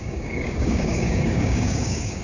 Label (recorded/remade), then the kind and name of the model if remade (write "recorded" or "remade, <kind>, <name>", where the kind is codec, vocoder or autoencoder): remade, codec, DAC